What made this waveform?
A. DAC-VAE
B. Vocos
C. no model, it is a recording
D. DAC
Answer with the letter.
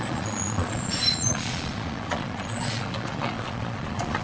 B